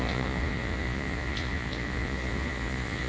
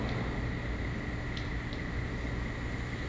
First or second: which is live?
second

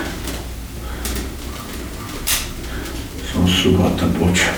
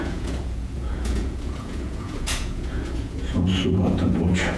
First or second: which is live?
first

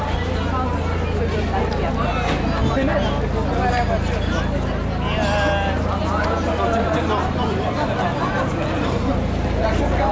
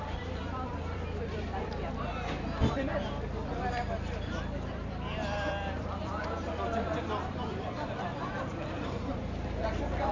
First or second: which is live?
first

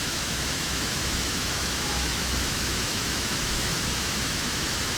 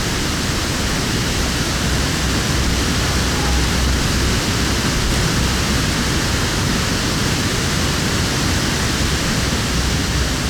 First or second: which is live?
second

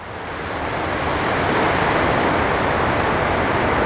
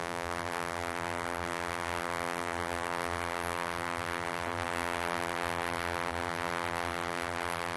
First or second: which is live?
first